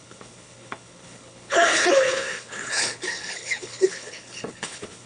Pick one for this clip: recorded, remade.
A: remade